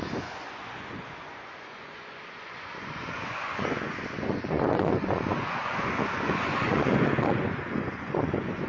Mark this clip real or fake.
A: fake